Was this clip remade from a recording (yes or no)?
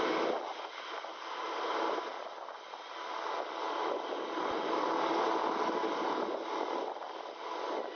no